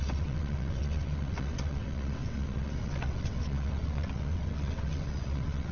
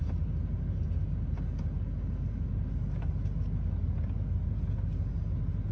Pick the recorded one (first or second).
second